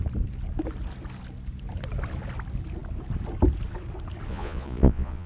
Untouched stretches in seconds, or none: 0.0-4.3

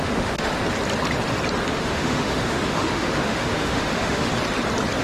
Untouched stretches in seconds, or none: 0.5-1.7; 4.3-5.0

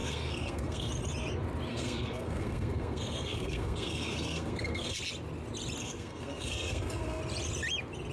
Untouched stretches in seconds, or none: 0.9-1.7; 5.0-5.8; 7.2-8.1

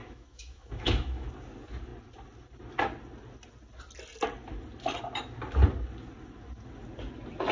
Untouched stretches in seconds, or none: 1.3-7.5